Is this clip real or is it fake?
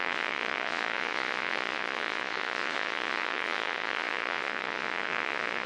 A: fake